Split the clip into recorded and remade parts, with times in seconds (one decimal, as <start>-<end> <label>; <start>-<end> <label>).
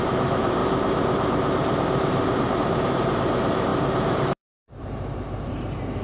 0.0-6.0 remade